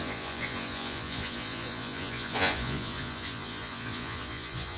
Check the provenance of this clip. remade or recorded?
remade